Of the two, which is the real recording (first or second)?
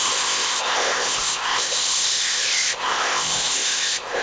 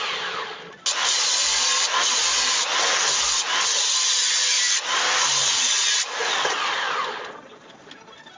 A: second